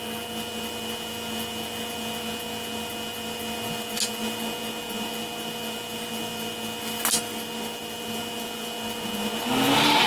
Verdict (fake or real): real